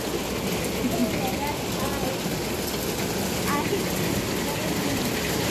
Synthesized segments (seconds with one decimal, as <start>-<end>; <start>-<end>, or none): none